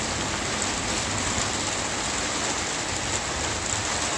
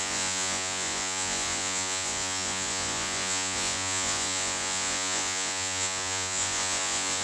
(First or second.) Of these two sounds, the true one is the first